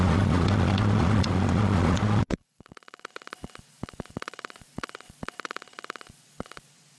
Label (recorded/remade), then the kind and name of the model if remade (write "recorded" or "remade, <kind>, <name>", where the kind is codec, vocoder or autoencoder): remade, vocoder, Vocos